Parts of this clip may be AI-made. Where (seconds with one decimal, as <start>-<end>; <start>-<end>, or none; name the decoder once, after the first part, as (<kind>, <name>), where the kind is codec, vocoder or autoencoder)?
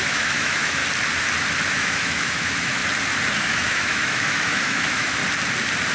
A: 0.0-0.8 (autoencoder, DAC-VAE); 1.7-2.8; 3.4-5.2